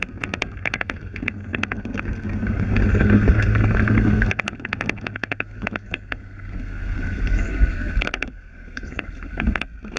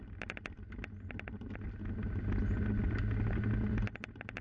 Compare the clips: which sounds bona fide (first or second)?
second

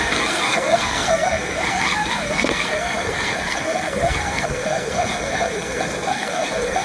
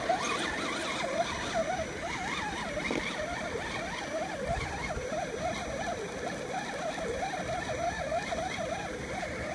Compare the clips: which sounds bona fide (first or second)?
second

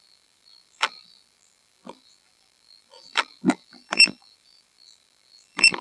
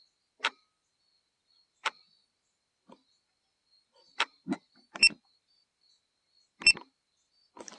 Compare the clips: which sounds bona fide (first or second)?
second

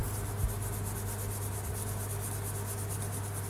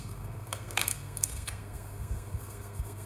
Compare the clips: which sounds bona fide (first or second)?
first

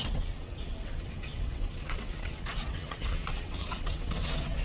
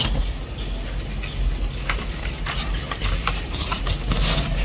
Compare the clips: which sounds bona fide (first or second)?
second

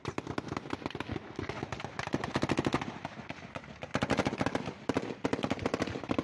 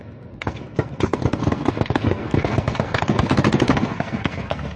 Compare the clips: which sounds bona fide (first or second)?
first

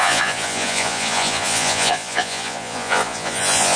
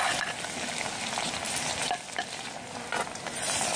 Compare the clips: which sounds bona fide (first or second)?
second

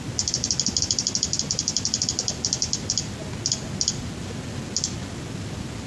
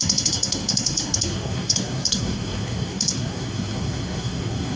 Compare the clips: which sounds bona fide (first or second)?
first